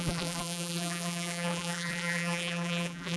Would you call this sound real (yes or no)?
no